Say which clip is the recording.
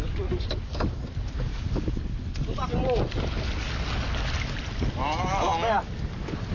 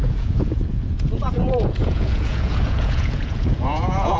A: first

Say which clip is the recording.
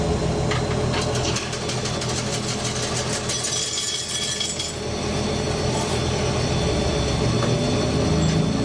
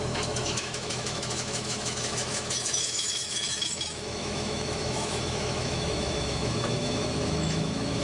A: first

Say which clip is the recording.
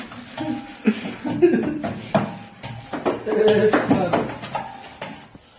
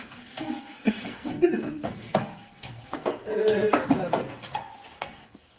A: first